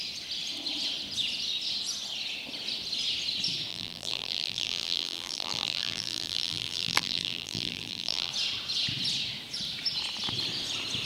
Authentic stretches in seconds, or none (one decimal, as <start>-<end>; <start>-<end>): 0.0-3.7; 8.3-11.1